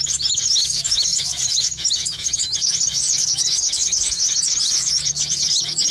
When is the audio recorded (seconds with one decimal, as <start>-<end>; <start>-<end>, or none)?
none